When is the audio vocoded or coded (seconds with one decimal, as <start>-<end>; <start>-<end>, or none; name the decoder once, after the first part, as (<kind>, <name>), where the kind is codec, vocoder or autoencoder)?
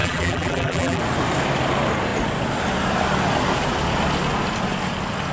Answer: 0.0-1.0 (vocoder, BigVGAN v2)